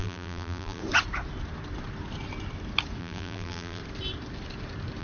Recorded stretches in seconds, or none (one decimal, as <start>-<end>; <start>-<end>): 0.8-3.0; 3.8-5.0

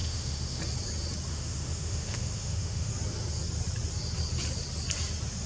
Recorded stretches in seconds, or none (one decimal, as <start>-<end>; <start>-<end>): 0.6-1.3; 2.9-5.5

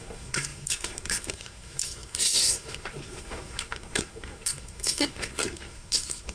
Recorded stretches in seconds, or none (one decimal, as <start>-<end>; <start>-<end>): none